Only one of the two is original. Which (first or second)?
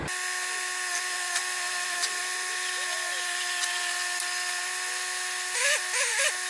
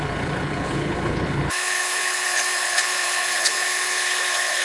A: first